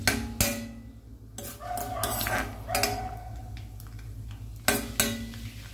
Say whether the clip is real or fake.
real